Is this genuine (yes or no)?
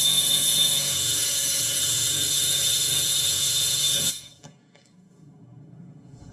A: no